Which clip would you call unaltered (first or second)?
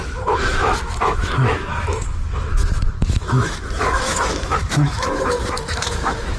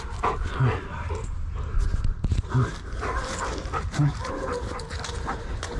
second